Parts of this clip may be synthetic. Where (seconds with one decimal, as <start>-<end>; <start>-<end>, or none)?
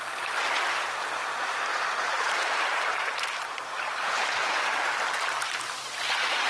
1.7-4.4; 5.4-6.0